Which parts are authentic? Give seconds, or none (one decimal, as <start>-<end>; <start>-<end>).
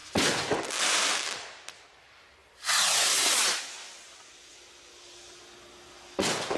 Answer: 0.0-6.6